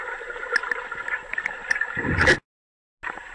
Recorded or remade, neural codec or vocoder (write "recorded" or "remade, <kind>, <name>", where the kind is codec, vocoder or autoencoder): recorded